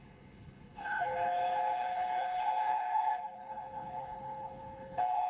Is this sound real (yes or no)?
no